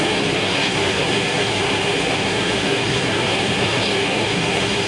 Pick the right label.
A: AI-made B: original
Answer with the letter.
A